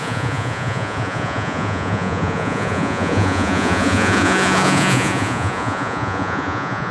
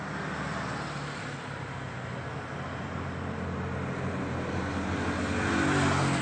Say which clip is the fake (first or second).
first